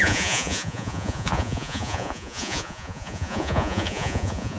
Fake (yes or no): yes